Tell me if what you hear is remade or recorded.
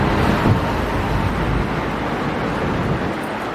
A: recorded